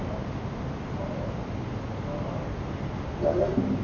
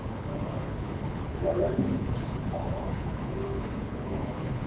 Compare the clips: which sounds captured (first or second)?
first